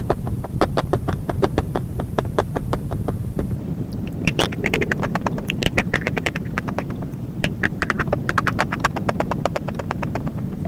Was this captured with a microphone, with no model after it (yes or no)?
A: no